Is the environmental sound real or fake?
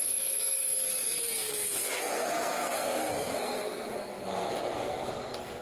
fake